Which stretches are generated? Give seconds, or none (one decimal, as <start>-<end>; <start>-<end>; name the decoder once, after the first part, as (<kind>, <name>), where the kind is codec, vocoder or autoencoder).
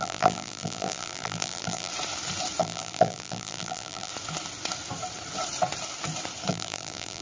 0.0-1.9 (vocoder, BigVGAN v2); 2.6-4.1; 6.5-7.2